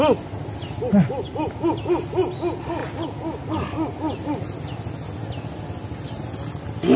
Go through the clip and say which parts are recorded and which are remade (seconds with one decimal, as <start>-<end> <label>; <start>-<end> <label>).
0.0-7.0 recorded